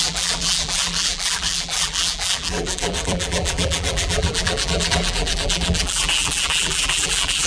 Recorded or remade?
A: remade